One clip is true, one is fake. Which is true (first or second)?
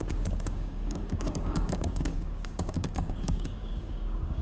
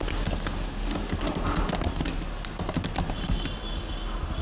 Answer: second